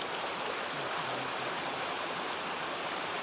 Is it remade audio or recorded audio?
recorded